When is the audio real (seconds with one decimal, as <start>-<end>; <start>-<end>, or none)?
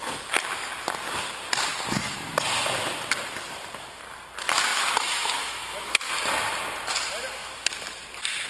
0.0-4.7; 6.1-8.5